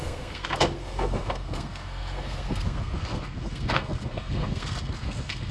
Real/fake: fake